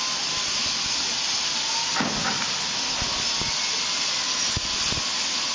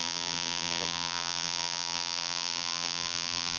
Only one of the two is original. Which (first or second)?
first